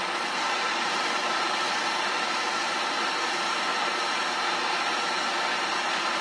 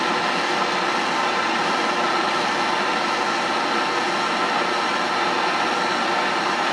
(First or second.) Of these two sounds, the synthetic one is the first